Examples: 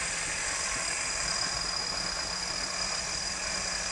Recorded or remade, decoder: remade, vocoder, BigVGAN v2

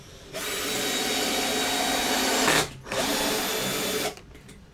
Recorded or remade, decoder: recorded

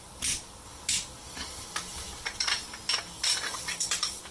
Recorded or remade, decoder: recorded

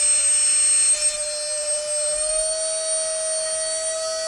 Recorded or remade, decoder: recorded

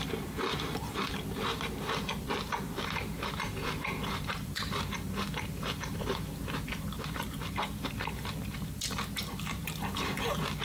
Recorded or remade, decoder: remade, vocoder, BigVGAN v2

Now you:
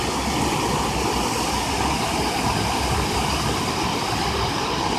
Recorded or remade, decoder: recorded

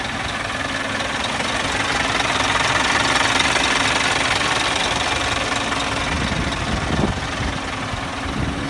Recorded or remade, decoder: recorded